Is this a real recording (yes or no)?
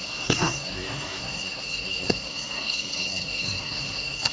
no